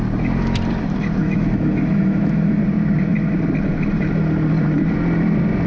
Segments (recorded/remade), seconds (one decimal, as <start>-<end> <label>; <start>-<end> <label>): 0.0-1.2 recorded; 1.2-2.6 remade; 2.6-5.7 recorded